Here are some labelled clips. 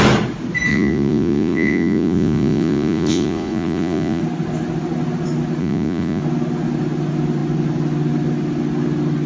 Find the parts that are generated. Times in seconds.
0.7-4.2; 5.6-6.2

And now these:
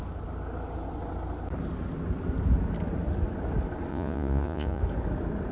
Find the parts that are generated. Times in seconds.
3.9-4.8

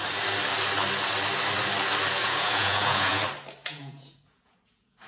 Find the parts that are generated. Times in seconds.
2.2-3.2; 3.6-5.1

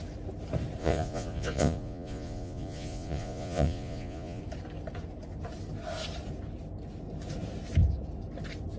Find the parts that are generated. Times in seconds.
0.8-4.4

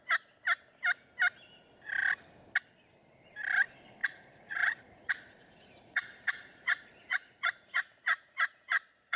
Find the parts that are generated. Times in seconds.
4.0-9.2